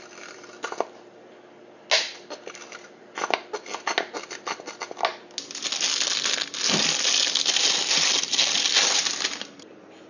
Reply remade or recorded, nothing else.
recorded